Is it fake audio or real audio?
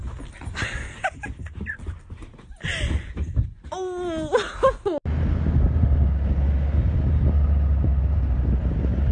real